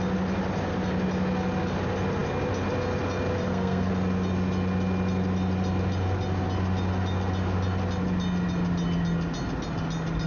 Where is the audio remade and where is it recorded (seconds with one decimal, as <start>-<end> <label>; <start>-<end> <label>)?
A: 0.0-3.4 recorded; 3.4-3.9 remade; 3.9-10.3 recorded